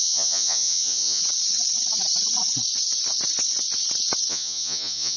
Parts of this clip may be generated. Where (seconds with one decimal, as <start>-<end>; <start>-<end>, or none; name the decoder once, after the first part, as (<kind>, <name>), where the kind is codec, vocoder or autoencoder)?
0.0-1.2 (vocoder, Vocos); 4.3-5.2